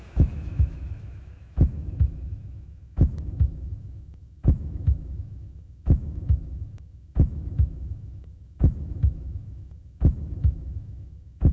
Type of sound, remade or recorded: remade